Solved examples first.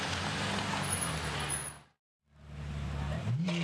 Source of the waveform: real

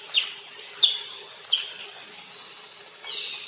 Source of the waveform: real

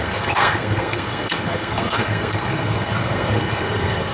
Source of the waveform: fake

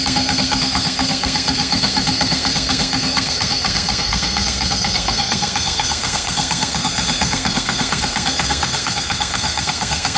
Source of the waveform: fake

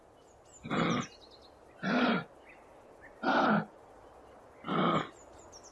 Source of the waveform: real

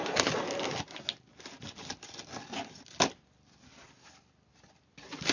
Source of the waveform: real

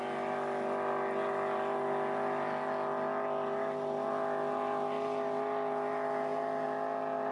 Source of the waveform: real